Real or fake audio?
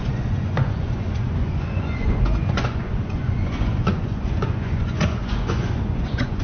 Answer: fake